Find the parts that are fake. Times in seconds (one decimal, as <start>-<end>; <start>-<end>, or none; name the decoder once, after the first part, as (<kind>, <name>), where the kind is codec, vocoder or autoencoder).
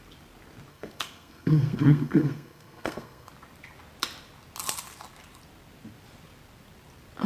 0.7-3.3 (codec, SNAC)